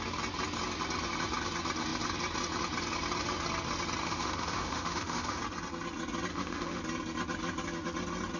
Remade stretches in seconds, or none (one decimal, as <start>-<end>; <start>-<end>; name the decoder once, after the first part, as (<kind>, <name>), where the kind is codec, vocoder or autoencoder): 4.0-5.4 (autoencoder, DAC-VAE); 6.3-6.8